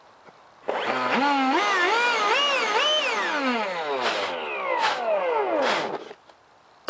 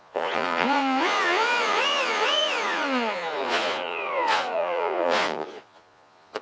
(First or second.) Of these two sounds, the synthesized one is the second